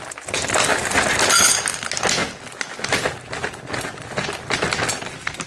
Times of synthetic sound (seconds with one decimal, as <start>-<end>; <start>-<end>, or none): 0.7-1.2